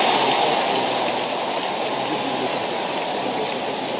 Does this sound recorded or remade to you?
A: recorded